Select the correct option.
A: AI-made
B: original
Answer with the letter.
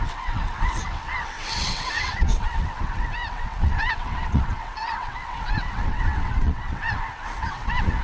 A